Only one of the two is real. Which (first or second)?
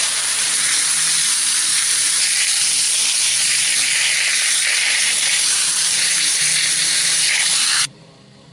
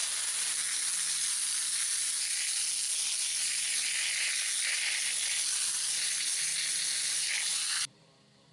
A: second